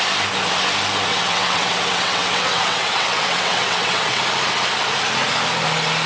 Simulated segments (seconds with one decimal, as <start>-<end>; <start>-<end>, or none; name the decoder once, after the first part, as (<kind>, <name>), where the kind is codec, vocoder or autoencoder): 1.1-4.2 (vocoder, WaveNeXt)